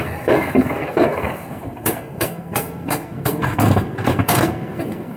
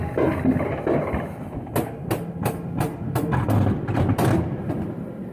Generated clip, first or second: first